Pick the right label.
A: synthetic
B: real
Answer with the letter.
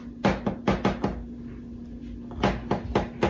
B